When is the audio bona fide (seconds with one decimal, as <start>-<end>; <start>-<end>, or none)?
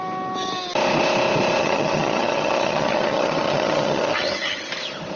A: 0.0-1.6; 4.7-5.2